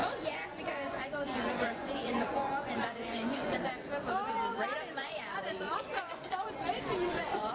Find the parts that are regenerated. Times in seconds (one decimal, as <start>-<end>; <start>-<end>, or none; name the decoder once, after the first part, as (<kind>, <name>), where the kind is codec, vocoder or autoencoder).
0.0-3.7 (vocoder, Vocos); 5.0-7.5